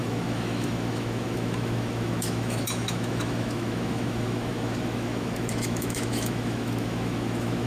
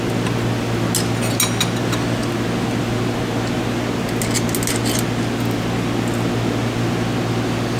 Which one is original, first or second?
second